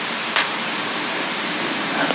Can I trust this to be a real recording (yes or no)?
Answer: no